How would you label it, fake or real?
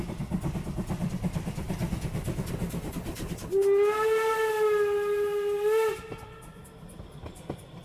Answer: real